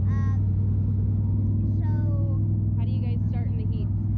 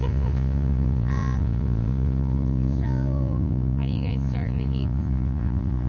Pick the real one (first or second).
first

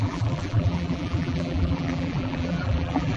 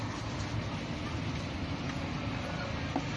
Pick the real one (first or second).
second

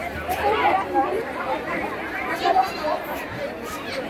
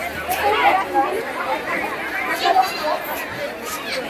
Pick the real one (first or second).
second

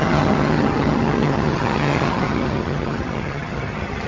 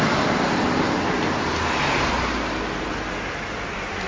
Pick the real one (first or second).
second